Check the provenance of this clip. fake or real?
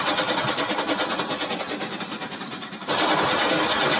real